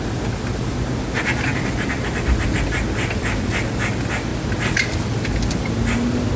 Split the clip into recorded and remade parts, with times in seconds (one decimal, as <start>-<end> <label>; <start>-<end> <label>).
0.0-6.4 recorded